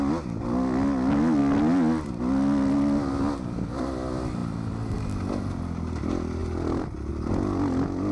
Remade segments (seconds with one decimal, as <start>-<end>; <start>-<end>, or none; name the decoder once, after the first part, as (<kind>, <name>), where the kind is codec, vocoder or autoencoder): none